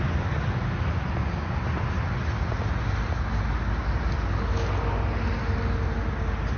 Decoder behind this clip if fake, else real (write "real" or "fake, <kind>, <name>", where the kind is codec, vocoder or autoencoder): real